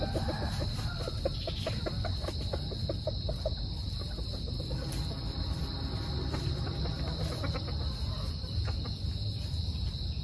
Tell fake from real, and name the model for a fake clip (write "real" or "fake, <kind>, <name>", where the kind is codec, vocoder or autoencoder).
real